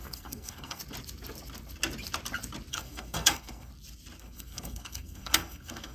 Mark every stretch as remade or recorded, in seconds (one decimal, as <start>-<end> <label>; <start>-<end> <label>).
0.0-0.8 remade; 0.8-2.7 recorded; 2.7-3.7 remade; 3.7-4.2 recorded; 4.2-5.9 remade